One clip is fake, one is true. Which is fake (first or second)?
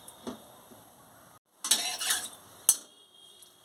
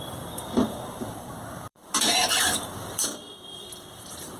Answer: second